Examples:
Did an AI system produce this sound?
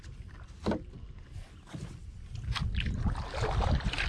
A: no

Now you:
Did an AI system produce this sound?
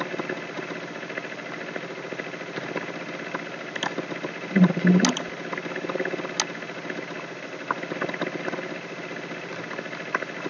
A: no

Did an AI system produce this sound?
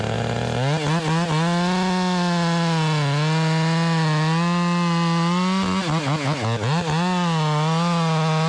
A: no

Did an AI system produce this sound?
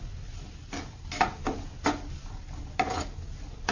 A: no